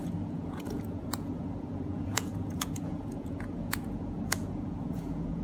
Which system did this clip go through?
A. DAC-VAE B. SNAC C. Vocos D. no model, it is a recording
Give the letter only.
C